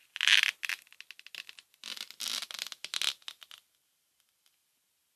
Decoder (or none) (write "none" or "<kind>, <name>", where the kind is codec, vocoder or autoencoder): none